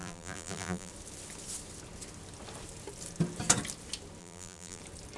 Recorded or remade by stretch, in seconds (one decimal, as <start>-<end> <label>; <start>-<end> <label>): 0.0-0.9 remade; 0.9-4.2 recorded; 4.2-4.8 remade; 4.8-5.2 recorded